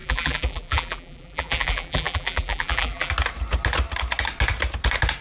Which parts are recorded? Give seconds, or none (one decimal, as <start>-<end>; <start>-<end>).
3.1-5.2